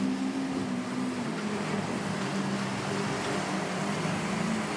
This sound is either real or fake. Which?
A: real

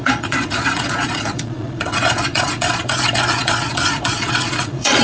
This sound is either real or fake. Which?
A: fake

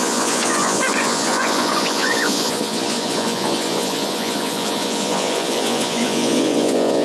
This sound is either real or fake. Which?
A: fake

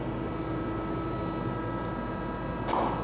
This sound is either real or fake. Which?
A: real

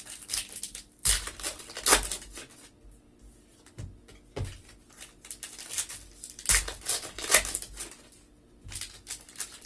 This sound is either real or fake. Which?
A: real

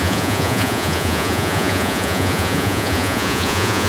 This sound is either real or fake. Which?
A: fake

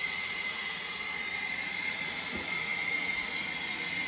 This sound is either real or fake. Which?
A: fake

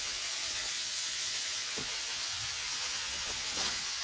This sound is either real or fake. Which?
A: fake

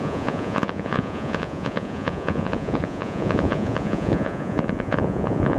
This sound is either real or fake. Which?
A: fake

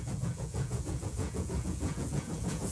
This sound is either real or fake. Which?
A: fake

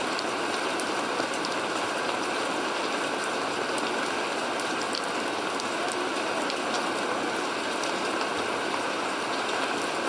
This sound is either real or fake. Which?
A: real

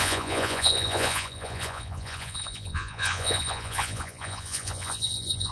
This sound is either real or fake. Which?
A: fake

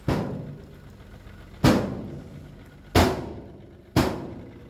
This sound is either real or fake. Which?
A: real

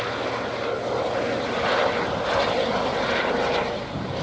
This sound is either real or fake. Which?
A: real